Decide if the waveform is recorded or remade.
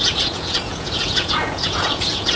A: remade